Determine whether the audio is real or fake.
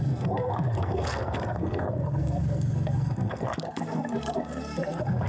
fake